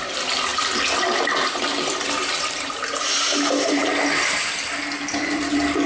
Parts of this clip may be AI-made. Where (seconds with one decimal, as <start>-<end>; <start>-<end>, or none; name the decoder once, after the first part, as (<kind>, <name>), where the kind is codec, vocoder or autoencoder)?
none